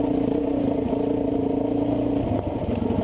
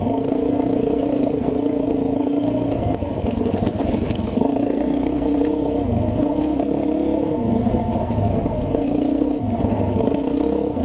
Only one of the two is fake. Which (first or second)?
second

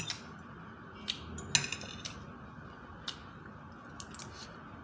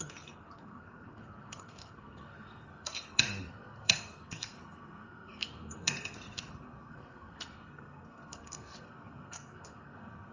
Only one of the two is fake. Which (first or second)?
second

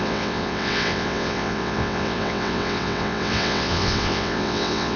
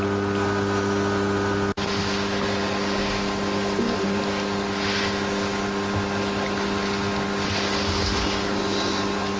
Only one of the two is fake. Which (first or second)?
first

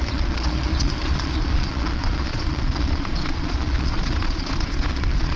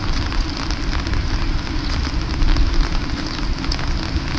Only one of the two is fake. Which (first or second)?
first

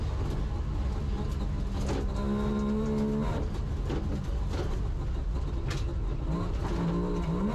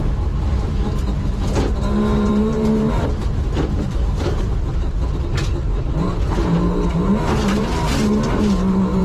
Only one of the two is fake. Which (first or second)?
second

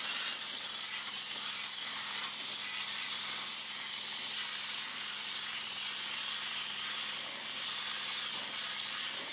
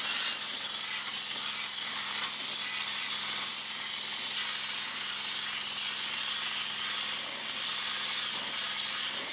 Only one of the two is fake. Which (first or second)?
first